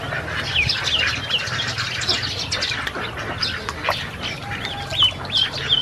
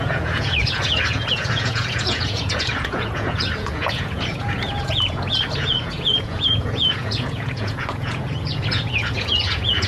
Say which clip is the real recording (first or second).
first